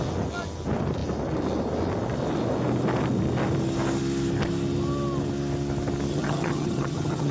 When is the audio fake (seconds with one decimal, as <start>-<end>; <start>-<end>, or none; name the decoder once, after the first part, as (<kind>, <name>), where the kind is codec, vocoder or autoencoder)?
6.1-7.3 (vocoder, HiFi-GAN)